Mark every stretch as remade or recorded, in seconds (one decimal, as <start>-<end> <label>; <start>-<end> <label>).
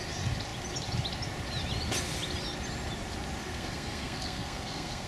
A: 0.0-3.4 recorded; 3.4-5.1 remade